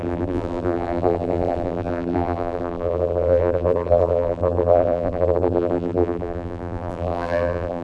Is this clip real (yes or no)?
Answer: no